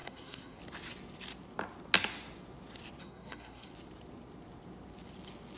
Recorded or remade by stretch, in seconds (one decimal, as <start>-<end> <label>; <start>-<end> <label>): 0.0-0.6 remade; 0.6-3.0 recorded; 3.0-3.7 remade; 3.7-5.6 recorded